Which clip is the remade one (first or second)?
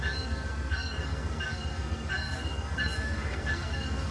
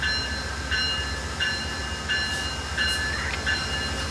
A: first